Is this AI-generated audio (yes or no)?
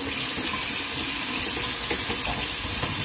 no